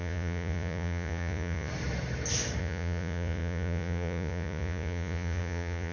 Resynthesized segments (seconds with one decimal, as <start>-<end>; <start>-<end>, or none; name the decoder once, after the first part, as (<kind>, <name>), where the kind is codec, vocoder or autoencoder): 0.0-1.7 (vocoder, Vocos); 2.6-5.9